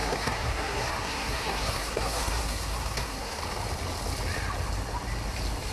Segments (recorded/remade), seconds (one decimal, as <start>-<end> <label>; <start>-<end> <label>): 0.0-3.4 remade; 3.4-5.7 recorded